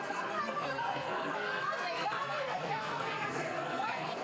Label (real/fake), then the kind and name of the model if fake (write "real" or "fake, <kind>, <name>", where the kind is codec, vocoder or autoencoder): fake, codec, SNAC